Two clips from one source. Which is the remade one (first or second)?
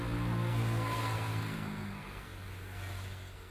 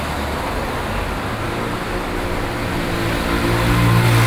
first